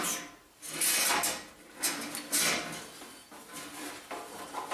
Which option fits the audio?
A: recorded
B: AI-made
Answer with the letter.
A